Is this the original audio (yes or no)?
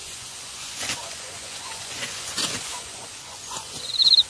no